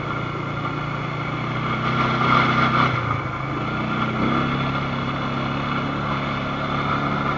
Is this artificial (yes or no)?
no